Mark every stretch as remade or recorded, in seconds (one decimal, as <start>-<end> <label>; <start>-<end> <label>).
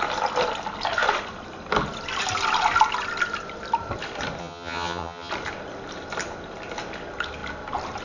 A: 0.0-4.4 recorded; 4.4-5.3 remade; 5.3-8.0 recorded